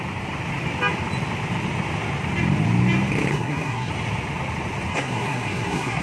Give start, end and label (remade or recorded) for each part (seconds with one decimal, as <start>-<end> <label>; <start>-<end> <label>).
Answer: 0.0-3.3 recorded; 3.3-3.9 remade; 3.9-4.9 recorded; 4.9-6.0 remade